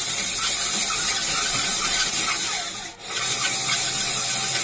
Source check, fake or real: real